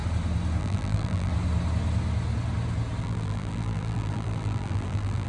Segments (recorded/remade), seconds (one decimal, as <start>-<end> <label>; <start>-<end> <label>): 0.0-0.6 recorded; 0.6-1.3 remade; 1.3-3.0 recorded; 3.0-5.3 remade